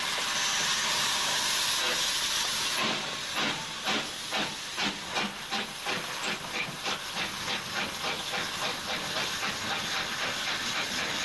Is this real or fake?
real